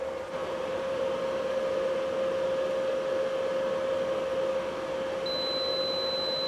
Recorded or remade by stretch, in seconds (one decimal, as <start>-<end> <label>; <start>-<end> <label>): 0.0-0.4 recorded; 0.4-1.2 remade; 1.2-6.5 recorded